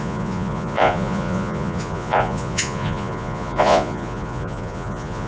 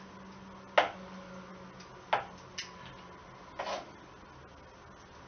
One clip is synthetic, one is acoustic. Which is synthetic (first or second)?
first